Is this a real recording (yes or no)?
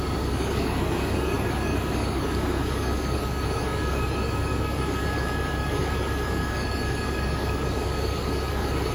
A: no